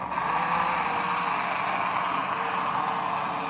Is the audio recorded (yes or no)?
yes